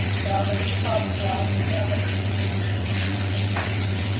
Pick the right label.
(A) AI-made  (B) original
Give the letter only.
A